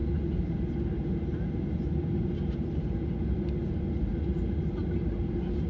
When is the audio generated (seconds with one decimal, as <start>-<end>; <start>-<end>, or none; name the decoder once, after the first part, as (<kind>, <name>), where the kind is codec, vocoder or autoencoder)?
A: none